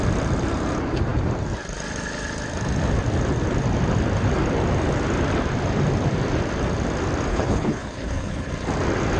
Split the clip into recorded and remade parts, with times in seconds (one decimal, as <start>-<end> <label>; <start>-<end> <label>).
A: 0.0-7.3 recorded; 7.3-8.5 remade; 8.5-9.2 recorded